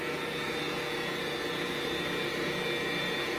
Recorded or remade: recorded